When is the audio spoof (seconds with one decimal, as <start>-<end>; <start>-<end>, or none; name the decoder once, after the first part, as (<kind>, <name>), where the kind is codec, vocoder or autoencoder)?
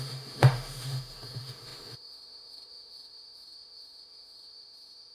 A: 0.0-5.1 (autoencoder, DAC-VAE)